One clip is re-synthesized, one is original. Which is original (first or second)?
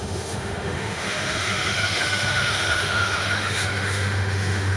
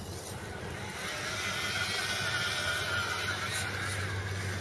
second